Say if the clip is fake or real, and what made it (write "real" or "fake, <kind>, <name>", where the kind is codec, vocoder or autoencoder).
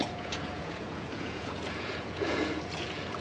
fake, vocoder, Vocos